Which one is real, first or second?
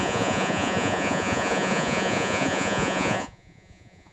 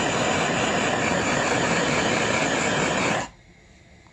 second